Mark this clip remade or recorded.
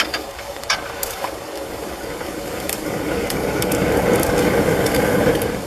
remade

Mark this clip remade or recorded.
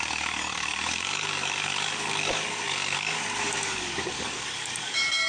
remade